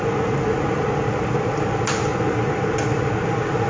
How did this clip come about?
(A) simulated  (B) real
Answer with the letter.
B